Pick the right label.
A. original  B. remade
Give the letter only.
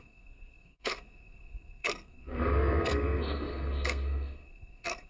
B